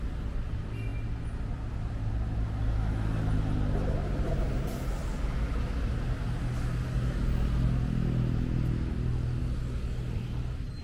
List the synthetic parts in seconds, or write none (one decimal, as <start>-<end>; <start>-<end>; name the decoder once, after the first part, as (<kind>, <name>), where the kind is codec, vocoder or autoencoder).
none